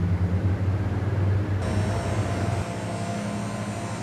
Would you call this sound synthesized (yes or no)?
no